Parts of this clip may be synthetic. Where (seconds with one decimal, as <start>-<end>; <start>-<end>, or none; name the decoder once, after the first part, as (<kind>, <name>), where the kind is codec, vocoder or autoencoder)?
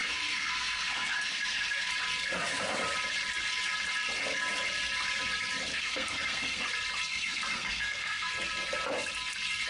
0.0-1.9 (codec, SNAC); 5.7-6.6; 7.1-8.3